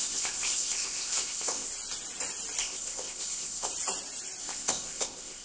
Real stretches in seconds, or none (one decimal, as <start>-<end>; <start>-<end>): 1.7-2.6; 3.7-4.4